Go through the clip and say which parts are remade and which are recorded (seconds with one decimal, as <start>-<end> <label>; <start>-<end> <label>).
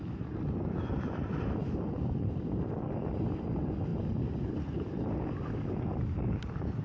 0.0-3.9 remade; 3.9-4.5 recorded; 4.5-6.8 remade